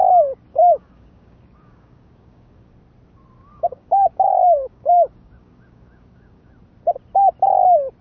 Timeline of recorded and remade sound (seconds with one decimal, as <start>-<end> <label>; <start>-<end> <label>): 0.0-0.5 recorded; 0.5-2.7 remade; 2.7-3.5 recorded; 3.5-6.5 remade; 6.5-8.0 recorded